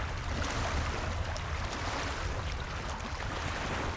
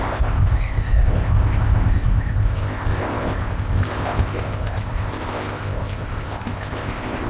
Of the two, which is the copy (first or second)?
second